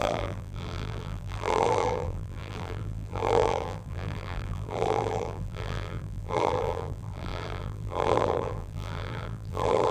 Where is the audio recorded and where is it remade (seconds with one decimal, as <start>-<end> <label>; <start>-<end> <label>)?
0.0-9.9 remade